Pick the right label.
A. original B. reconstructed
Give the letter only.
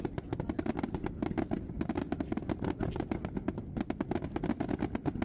A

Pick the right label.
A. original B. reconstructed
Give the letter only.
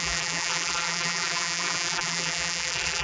B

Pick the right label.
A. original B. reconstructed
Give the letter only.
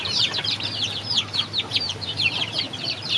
B